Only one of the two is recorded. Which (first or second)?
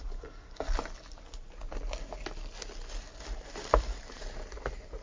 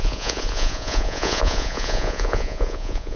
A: first